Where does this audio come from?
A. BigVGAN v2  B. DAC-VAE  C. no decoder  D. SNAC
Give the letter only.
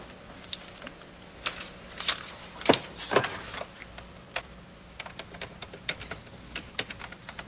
A